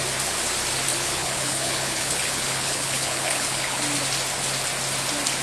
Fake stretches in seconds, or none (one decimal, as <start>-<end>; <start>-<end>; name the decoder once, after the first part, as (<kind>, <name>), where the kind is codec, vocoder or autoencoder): 0.9-3.8 (codec, HILCodec)